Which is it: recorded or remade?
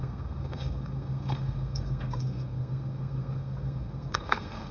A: remade